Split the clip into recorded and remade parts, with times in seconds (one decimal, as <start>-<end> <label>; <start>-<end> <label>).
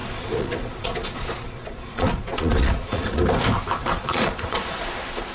0.0-3.2 remade; 3.2-3.9 recorded; 3.9-4.8 remade; 4.8-5.3 recorded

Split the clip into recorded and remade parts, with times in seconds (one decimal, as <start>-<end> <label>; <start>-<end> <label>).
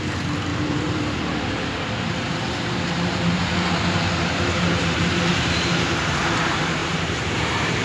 0.0-7.8 remade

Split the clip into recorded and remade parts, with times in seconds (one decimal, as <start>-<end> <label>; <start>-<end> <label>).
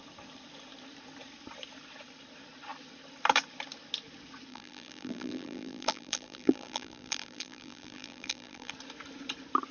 0.0-4.5 recorded; 4.5-8.7 remade; 8.7-9.7 recorded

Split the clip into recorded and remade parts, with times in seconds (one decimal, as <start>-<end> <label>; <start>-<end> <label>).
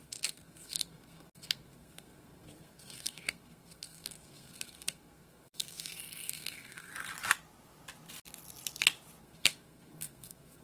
0.0-6.9 remade; 6.9-9.2 recorded; 9.2-10.6 remade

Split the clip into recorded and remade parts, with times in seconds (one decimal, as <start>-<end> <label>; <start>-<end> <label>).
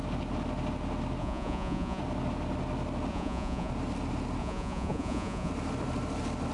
0.0-1.2 recorded; 1.2-2.0 remade; 2.0-3.1 recorded; 3.1-3.7 remade; 3.7-4.4 recorded; 4.4-5.5 remade; 5.5-6.5 recorded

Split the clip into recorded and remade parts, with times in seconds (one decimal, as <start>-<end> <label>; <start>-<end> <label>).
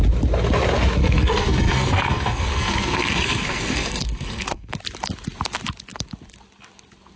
0.0-1.0 recorded; 1.0-4.7 remade; 4.7-7.2 recorded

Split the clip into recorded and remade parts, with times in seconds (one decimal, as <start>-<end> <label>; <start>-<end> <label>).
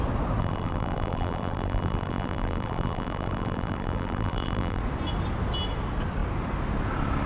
0.0-0.4 recorded; 0.4-4.8 remade; 4.8-7.3 recorded